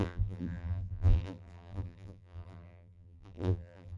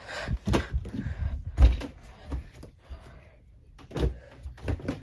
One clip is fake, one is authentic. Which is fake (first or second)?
first